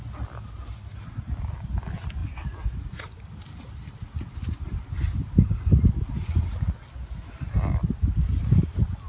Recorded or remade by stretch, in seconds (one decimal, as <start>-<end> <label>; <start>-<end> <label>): 0.0-9.1 recorded